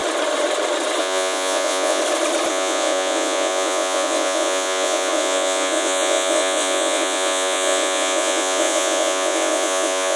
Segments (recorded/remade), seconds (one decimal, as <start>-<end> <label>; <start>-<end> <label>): 0.0-1.0 recorded; 1.0-2.0 remade; 2.0-2.5 recorded; 2.5-10.2 remade